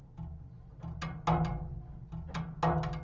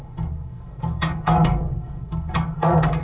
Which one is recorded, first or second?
first